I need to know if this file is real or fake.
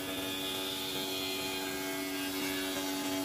real